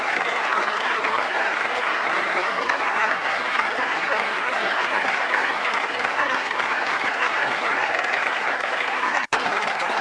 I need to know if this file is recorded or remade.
remade